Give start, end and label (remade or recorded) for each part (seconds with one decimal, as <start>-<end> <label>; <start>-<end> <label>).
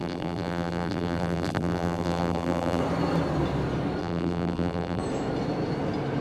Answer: 0.0-2.8 remade; 2.8-4.0 recorded; 4.0-5.0 remade; 5.0-6.2 recorded